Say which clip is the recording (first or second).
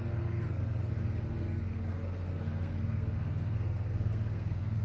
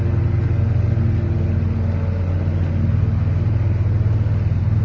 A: second